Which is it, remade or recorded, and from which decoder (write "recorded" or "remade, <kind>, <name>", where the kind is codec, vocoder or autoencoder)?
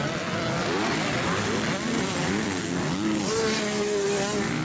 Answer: recorded